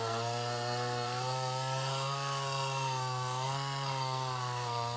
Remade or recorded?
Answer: remade